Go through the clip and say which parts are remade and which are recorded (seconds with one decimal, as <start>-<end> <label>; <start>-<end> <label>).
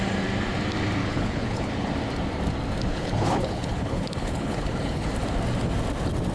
0.0-1.0 recorded; 1.0-1.9 remade; 1.9-2.9 recorded; 2.9-5.1 remade; 5.1-6.3 recorded